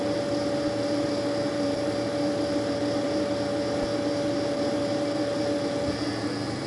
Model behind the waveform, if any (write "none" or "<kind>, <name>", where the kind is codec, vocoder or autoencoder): none